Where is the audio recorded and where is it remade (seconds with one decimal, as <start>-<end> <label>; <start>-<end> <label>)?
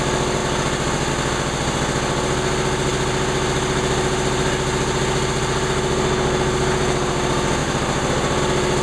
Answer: 0.0-7.6 recorded; 7.6-8.4 remade; 8.4-8.8 recorded